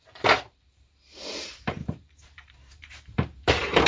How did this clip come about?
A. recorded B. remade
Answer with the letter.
B